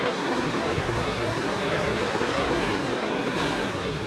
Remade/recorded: remade